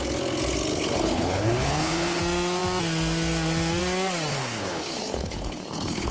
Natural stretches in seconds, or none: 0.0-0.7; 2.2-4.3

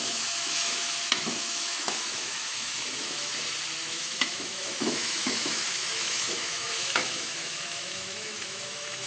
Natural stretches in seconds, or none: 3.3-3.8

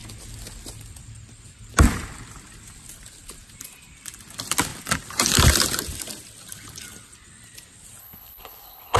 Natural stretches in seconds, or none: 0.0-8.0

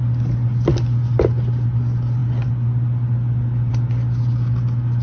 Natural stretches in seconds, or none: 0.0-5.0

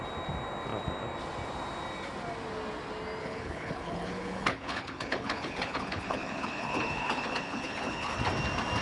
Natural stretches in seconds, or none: 0.0-3.2; 8.2-8.8